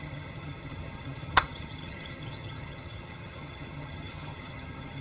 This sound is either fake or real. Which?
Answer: fake